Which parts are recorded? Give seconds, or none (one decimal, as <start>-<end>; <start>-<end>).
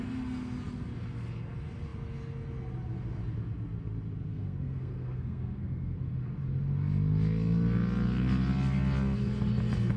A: 0.0-4.3; 6.0-10.0